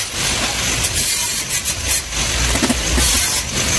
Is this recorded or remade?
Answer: recorded